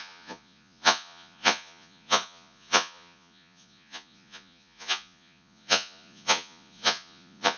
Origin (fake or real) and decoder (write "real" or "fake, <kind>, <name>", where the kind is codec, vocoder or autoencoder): fake, vocoder, Vocos